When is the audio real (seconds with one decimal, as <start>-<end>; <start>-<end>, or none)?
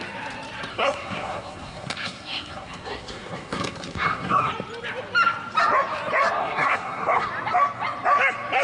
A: 0.0-0.7; 4.5-6.4; 7.3-8.6